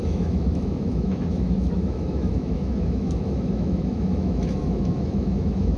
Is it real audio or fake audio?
fake